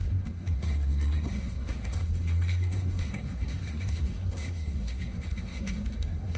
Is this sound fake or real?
fake